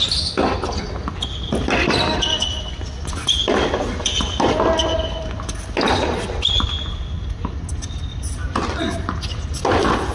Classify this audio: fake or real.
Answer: real